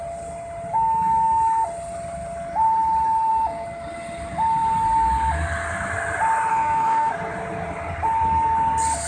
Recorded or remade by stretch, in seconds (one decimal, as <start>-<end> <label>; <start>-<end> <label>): 0.0-6.5 recorded; 6.5-7.1 remade; 7.1-9.1 recorded